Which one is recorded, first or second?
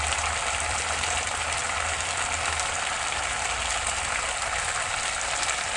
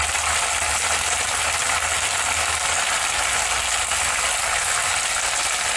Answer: second